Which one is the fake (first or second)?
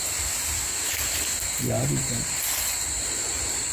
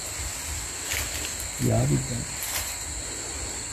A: first